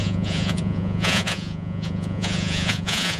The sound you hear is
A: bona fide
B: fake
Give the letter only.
B